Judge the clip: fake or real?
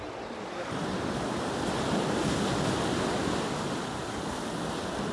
real